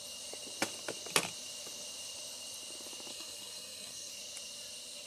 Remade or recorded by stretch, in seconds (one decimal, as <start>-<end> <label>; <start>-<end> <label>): 0.0-3.1 recorded; 3.1-4.1 remade; 4.1-5.1 recorded